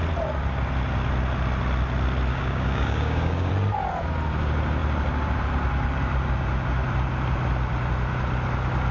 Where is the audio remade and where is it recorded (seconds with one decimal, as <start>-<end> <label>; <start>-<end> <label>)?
0.0-2.3 recorded; 2.3-3.5 remade; 3.5-8.9 recorded

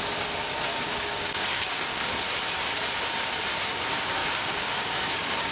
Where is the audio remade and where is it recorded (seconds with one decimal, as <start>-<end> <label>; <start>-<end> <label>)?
0.0-0.7 recorded; 0.7-2.1 remade; 2.1-4.2 recorded; 4.2-5.5 remade